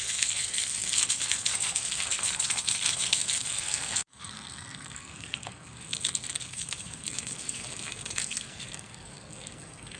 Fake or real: fake